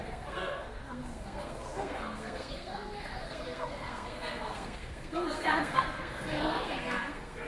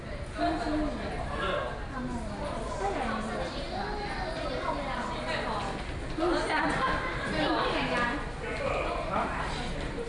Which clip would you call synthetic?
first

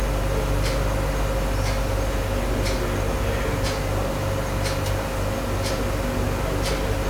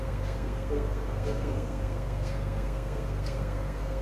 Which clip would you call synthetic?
second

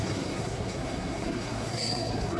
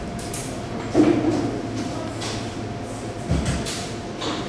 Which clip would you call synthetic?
first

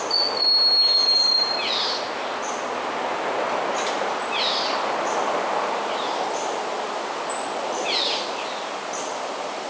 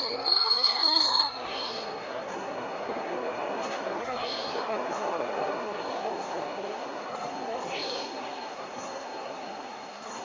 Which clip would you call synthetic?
second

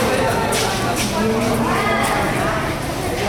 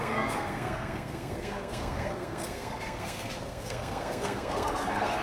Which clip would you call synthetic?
second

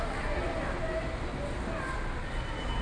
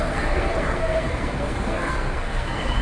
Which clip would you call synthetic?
second